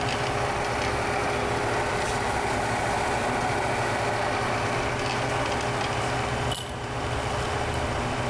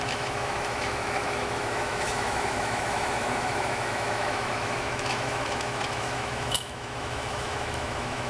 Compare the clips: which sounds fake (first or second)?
second